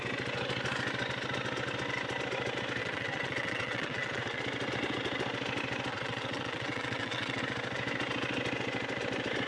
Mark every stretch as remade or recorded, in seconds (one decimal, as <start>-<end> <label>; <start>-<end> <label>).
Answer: 0.0-2.8 recorded; 2.8-4.4 remade; 4.4-5.9 recorded; 5.9-7.4 remade; 7.4-9.5 recorded